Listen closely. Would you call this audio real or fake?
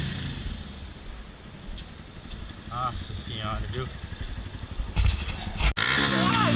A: real